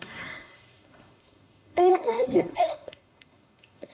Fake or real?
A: fake